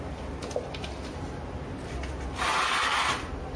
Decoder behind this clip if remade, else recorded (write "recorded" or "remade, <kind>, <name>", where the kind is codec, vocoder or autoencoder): recorded